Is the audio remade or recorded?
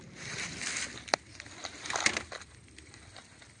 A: recorded